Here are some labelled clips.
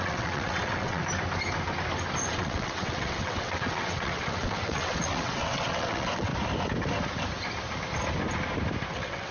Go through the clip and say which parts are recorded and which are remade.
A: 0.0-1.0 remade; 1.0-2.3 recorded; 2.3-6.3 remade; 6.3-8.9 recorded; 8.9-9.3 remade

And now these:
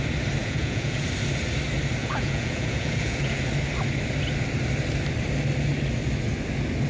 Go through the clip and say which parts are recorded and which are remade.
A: 0.0-0.4 recorded; 0.4-1.1 remade; 1.1-2.0 recorded; 2.0-3.4 remade; 3.4-6.9 recorded

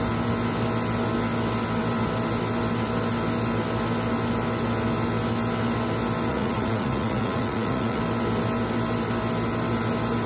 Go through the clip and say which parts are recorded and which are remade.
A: 0.0-6.3 recorded; 6.3-8.0 remade; 8.0-10.3 recorded

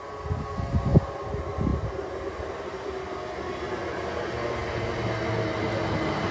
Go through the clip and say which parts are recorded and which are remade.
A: 0.0-6.3 recorded

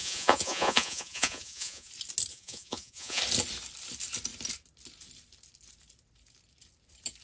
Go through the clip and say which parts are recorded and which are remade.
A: 0.0-1.9 remade; 1.9-2.3 recorded; 2.3-3.2 remade; 3.2-7.2 recorded